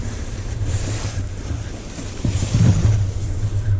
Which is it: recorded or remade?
remade